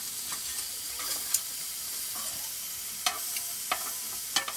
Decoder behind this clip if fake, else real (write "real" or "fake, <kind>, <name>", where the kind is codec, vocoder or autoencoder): real